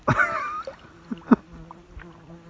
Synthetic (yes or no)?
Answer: no